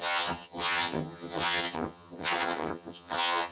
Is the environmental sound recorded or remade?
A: remade